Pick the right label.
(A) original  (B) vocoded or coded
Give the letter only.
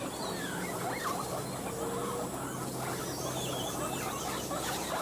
A